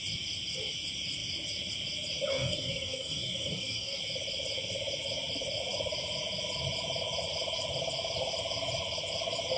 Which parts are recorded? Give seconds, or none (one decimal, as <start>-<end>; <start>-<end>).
0.0-2.3; 4.0-9.6